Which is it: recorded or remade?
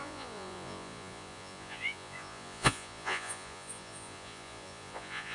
remade